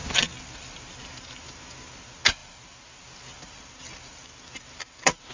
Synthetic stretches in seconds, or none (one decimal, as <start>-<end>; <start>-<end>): none